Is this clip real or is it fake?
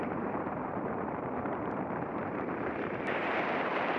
fake